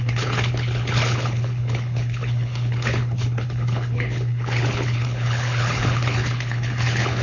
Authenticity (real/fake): fake